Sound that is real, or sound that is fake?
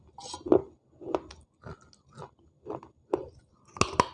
real